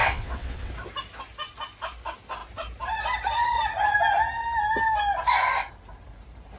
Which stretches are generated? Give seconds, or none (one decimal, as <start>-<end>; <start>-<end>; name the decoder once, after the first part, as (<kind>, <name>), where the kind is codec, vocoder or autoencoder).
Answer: 0.0-0.7 (vocoder, WaveNeXt)